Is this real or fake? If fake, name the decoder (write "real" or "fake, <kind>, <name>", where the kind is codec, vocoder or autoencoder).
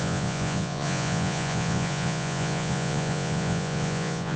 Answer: fake, vocoder, Vocos